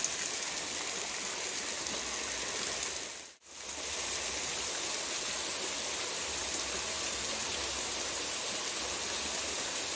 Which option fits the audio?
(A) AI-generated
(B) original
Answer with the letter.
B